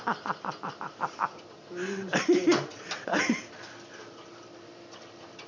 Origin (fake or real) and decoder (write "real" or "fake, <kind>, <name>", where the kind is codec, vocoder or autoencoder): real